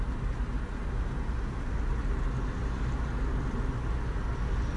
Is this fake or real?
real